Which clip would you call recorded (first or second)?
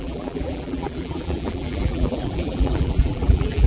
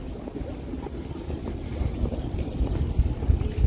second